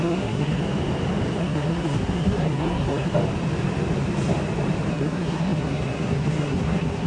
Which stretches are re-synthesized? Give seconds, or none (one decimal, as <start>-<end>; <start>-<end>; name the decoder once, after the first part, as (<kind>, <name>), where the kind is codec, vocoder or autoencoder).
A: 0.0-0.6 (codec, SNAC); 1.4-3.1; 4.9-7.1